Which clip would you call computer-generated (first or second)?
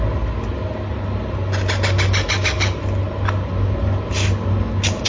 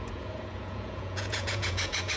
second